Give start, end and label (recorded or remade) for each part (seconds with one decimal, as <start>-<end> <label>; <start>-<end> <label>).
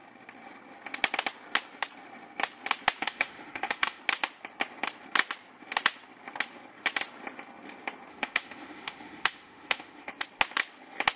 0.0-3.0 recorded; 3.0-4.0 remade; 4.0-8.1 recorded; 8.1-10.1 remade; 10.1-11.2 recorded